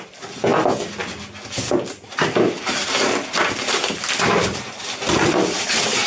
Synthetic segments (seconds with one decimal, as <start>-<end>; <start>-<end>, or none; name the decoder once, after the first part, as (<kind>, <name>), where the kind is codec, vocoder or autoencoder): none